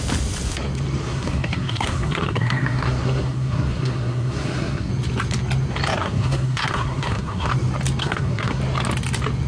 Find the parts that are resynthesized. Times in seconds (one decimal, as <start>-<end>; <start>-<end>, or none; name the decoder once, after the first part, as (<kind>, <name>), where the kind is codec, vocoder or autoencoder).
1.0-4.9 (codec, SNAC); 6.0-7.5; 8.0-8.6